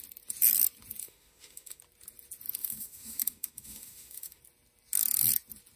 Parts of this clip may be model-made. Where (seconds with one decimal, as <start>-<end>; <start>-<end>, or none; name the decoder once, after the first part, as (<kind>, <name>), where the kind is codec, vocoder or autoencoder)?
1.0-1.8 (autoencoder, DAC-VAE); 2.6-4.4